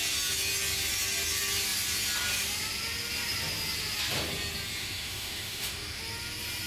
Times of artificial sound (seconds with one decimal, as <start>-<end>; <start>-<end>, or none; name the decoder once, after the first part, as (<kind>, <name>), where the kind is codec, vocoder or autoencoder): 4.8-6.0 (autoencoder, DAC-VAE)